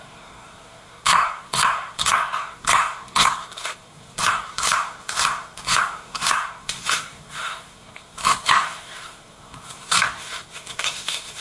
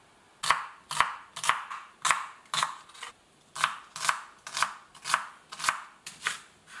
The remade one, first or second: first